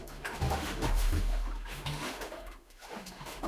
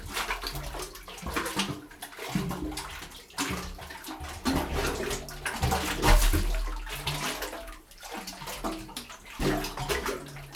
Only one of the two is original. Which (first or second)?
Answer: second